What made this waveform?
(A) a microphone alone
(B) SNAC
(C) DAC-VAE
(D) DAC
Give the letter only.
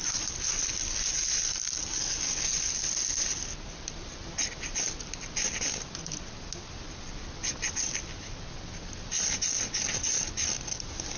A